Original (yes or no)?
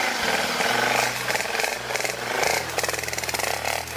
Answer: yes